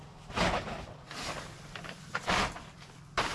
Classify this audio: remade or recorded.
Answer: recorded